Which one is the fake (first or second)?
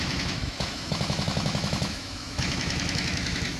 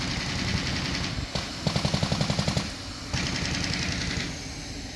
first